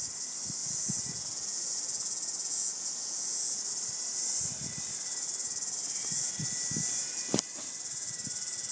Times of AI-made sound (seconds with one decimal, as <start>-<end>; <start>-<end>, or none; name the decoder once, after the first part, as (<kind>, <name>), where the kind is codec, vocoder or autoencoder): 0.6-3.6 (vocoder, Vocos)